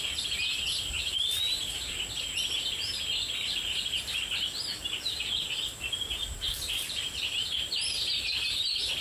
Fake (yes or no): no